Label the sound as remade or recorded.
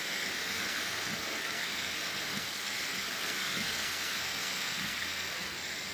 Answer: remade